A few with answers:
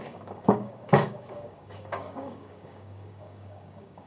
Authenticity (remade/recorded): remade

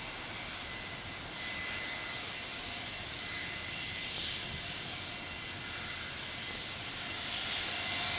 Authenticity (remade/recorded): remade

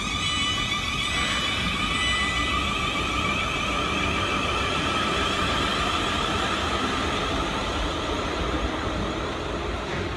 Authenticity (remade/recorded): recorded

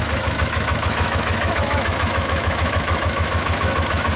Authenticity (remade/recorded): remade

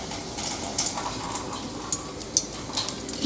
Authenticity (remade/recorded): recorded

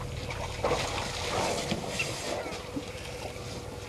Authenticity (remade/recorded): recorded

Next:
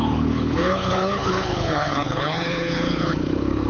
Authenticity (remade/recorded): remade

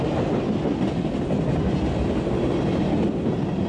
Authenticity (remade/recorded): recorded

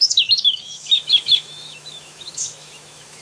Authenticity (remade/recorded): remade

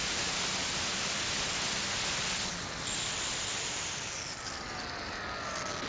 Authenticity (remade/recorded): recorded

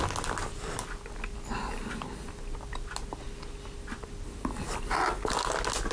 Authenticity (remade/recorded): recorded